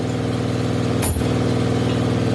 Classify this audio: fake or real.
real